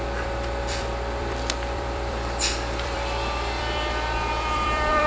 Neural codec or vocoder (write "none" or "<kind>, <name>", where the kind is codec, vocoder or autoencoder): vocoder, BigVGAN v2